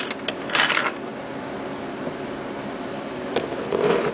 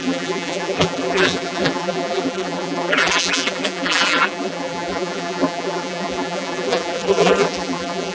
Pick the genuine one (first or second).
first